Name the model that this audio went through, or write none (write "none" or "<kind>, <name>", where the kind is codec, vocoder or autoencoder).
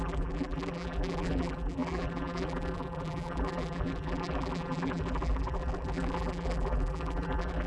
vocoder, BigVGAN v2